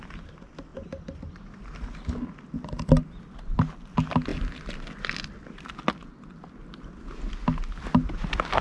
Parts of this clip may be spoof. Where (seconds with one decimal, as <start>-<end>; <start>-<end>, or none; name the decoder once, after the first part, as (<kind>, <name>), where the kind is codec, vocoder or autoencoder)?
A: none